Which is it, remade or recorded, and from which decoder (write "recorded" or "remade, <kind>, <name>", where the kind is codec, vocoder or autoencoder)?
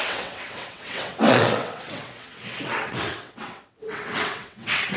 remade, vocoder, WaveNeXt